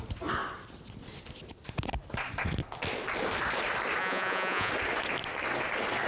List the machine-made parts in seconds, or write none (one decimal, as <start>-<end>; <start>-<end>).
4.0-4.7

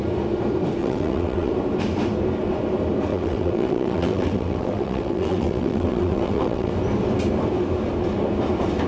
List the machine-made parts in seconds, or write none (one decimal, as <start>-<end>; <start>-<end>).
0.8-1.5; 3.1-6.7

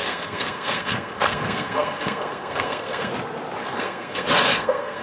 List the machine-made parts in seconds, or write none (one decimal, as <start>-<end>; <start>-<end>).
0.0-3.1; 3.6-5.0

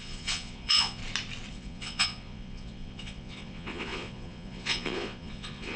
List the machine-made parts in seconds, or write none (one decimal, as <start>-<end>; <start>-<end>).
0.0-1.0; 1.5-5.8